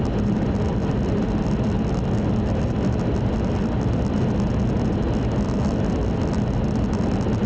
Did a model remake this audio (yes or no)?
no